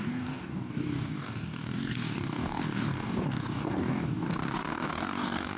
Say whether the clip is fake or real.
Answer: fake